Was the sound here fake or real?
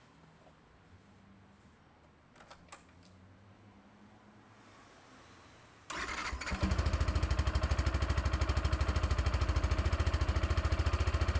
real